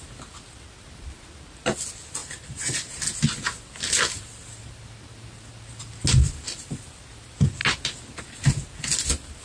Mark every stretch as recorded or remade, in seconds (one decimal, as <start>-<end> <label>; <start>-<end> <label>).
0.0-2.2 recorded; 2.2-3.0 remade; 3.0-9.4 recorded